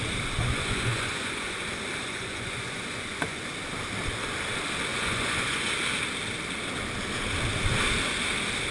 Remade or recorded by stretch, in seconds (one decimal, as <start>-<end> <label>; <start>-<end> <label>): 0.0-0.4 recorded; 0.4-1.6 remade; 1.6-2.0 recorded; 2.0-3.4 remade; 3.4-4.9 recorded; 4.9-5.7 remade; 5.7-8.7 recorded